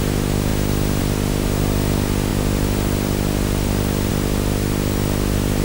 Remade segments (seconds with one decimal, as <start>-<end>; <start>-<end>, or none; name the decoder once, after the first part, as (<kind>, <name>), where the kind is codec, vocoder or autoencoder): none